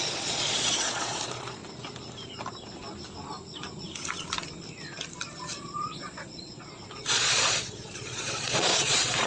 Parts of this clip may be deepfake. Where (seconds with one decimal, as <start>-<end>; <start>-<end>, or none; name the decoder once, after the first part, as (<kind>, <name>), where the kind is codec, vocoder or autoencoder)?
0.0-1.6 (vocoder, Vocos); 5.6-9.3